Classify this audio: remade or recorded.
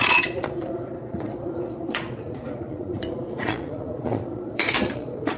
remade